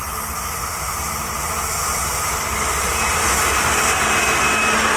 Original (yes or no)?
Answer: yes